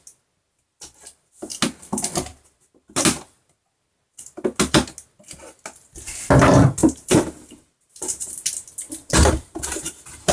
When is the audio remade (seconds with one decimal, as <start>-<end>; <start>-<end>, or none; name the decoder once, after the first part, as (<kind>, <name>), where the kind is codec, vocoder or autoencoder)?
6.8-8.3 (vocoder, BigVGAN v2); 9.0-9.9